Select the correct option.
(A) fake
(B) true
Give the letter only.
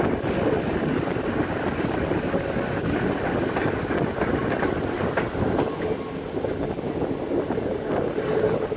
B